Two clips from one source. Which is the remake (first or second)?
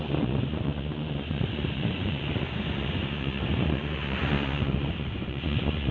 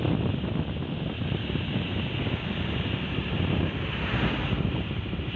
first